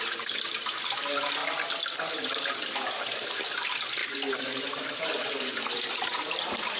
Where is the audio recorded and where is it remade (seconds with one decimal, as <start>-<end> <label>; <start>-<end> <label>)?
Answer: 0.0-1.4 remade; 1.4-2.1 recorded; 2.1-6.8 remade